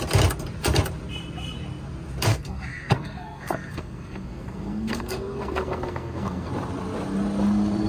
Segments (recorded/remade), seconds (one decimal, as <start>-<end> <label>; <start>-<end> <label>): 0.0-2.3 recorded; 2.3-6.5 remade; 6.5-7.9 recorded